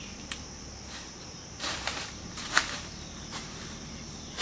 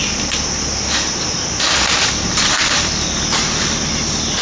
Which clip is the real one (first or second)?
second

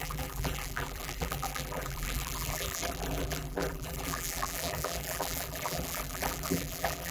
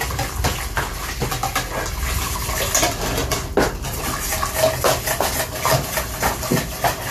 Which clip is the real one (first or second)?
second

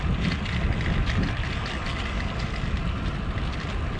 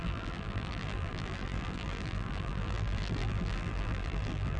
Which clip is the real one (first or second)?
first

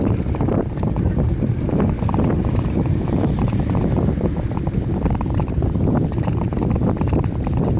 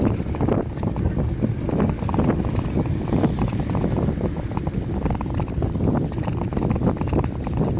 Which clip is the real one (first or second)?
second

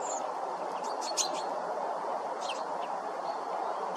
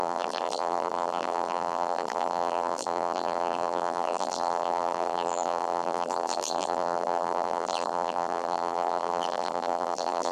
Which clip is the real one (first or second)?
first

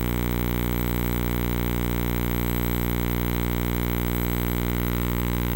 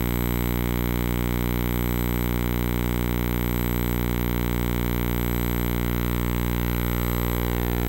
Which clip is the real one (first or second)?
second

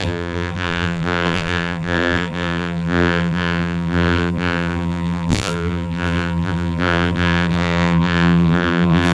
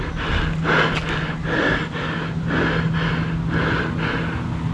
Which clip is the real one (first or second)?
second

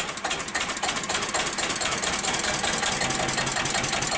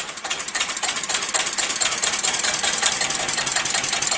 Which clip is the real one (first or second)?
first